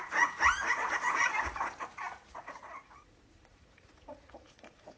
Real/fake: fake